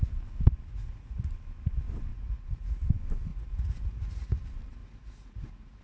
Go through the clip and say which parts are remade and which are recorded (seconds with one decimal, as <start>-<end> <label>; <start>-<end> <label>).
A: 0.0-0.7 recorded; 0.7-1.3 remade; 1.3-2.1 recorded; 2.1-2.8 remade; 2.8-3.3 recorded; 3.3-4.3 remade; 4.3-4.8 recorded; 4.8-5.8 remade